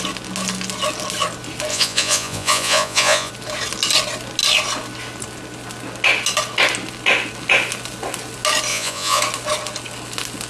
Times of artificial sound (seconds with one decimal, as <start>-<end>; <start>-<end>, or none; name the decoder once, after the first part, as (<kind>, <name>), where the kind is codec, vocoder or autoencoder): 1.7-3.3 (vocoder, Vocos); 8.7-9.2